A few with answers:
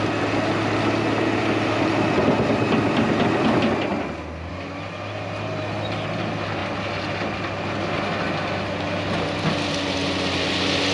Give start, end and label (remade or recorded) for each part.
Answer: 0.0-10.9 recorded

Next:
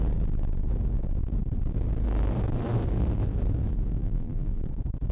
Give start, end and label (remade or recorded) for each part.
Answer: 0.0-4.0 recorded; 4.0-4.6 remade; 4.6-5.1 recorded

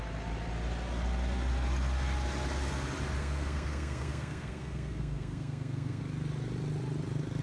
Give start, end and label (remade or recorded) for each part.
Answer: 0.0-3.2 recorded; 3.2-6.0 remade; 6.0-7.4 recorded

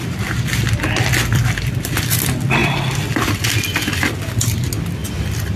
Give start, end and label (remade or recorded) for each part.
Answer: 0.0-5.6 remade

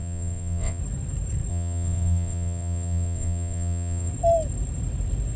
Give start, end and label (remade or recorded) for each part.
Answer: 0.0-0.8 remade; 0.8-1.5 recorded; 1.5-4.1 remade; 4.1-5.4 recorded

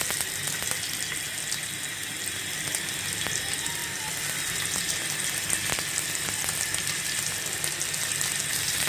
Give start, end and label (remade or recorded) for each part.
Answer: 0.0-8.9 recorded